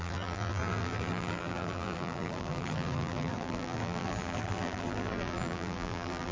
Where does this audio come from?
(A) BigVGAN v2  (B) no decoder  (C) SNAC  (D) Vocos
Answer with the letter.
A